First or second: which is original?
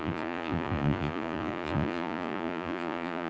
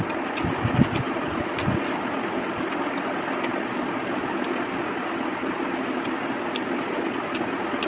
second